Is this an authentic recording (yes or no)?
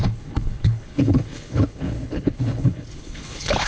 no